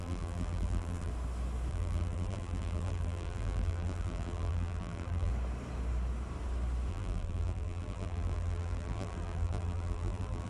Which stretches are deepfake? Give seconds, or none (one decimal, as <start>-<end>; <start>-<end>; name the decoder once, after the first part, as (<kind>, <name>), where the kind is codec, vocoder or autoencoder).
0.0-1.1 (vocoder, BigVGAN v2); 1.7-5.3; 6.9-10.5